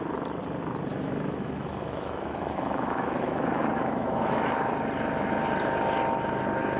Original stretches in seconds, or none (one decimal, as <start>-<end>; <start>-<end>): 0.0-0.9; 4.7-6.8